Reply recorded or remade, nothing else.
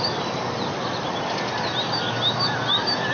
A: recorded